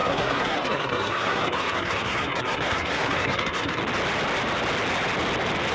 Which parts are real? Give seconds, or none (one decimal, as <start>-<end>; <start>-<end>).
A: 3.8-5.7